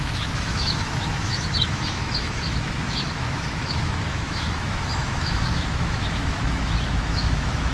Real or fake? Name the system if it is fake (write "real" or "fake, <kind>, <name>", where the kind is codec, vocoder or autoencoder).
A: fake, autoencoder, DAC-VAE